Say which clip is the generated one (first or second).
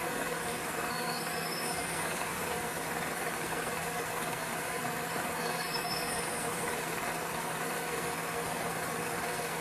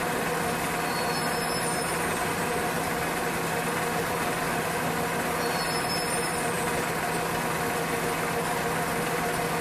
first